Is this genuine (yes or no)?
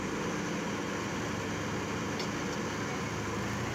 yes